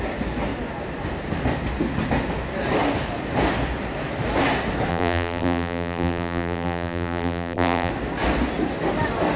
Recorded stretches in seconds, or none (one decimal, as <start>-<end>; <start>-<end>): 0.0-4.9; 7.9-9.4